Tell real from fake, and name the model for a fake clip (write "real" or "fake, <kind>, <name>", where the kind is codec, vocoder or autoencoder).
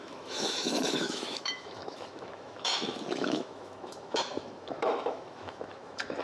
fake, autoencoder, DAC-VAE